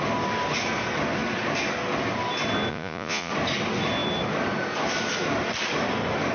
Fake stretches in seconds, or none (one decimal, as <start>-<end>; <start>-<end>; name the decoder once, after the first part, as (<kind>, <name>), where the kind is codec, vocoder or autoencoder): 2.7-3.3 (vocoder, Vocos)